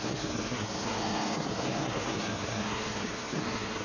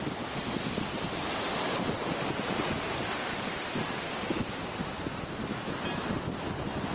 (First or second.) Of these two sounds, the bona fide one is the second